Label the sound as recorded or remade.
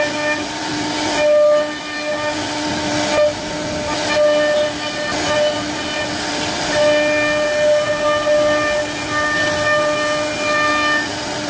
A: recorded